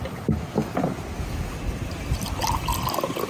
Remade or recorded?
recorded